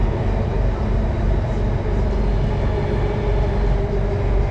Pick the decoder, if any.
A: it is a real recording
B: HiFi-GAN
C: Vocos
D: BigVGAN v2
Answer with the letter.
A